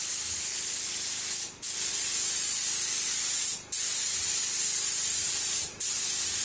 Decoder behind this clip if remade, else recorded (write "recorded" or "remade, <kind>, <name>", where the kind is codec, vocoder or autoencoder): recorded